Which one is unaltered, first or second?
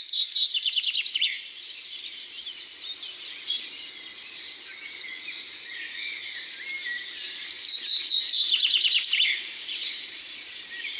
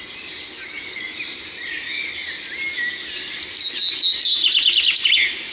second